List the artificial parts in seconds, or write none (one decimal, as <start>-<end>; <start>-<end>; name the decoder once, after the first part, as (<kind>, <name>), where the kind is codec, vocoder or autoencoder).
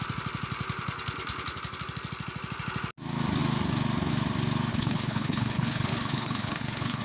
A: 4.7-7.0 (codec, HILCodec)